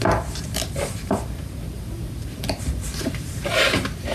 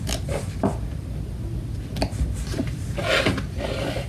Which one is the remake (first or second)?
first